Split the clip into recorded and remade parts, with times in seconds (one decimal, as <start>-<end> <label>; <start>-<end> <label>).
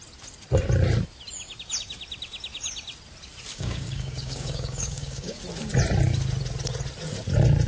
0.0-3.5 recorded; 3.5-5.4 remade; 5.4-7.7 recorded